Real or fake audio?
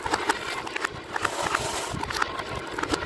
real